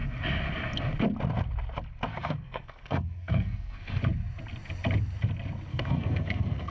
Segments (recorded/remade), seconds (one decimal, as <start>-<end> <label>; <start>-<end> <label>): 0.0-2.1 recorded; 2.1-4.0 remade; 4.0-5.7 recorded; 5.7-6.7 remade